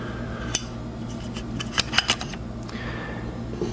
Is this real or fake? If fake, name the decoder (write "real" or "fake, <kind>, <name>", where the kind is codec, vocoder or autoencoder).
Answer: real